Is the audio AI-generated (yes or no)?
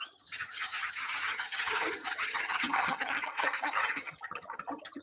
yes